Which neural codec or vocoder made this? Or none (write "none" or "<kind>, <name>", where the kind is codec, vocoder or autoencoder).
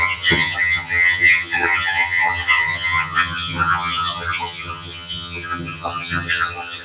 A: vocoder, HiFi-GAN